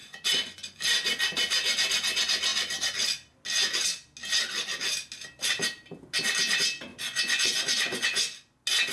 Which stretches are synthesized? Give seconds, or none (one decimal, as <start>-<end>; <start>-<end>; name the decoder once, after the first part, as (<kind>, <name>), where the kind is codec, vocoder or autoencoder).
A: 0.0-0.8 (vocoder, Vocos); 6.9-8.2